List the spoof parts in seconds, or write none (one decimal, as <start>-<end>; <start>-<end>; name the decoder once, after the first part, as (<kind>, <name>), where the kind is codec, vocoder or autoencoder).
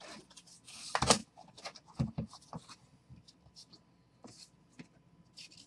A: none